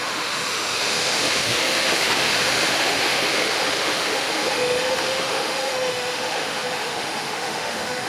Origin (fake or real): fake